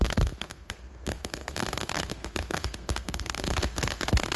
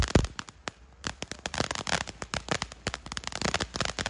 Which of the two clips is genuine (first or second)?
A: second